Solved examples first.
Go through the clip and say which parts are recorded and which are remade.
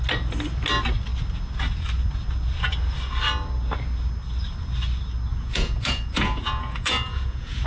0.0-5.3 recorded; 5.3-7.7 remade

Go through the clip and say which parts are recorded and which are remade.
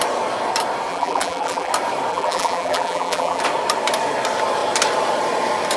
0.0-0.9 recorded; 0.9-1.7 remade; 1.7-2.1 recorded; 2.1-3.4 remade; 3.4-5.8 recorded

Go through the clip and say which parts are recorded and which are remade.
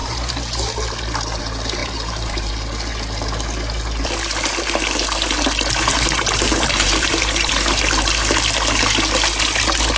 0.0-1.8 recorded; 1.8-2.5 remade; 2.5-5.9 recorded; 5.9-7.5 remade; 7.5-10.0 recorded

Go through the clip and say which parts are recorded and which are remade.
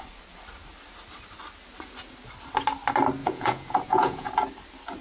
0.0-3.2 recorded; 3.2-4.3 remade; 4.3-5.0 recorded